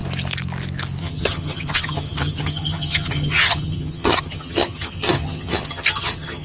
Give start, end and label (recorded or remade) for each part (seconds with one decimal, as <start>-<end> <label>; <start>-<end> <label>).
0.0-1.0 recorded; 1.0-6.4 remade